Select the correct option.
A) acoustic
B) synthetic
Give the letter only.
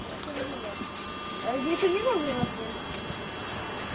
A